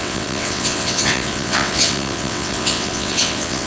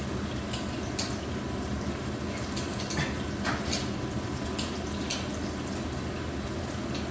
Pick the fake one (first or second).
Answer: first